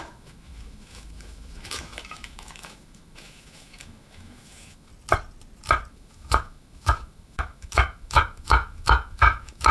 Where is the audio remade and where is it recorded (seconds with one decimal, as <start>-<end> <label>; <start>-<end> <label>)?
0.0-4.9 remade; 4.9-5.9 recorded; 5.9-9.7 remade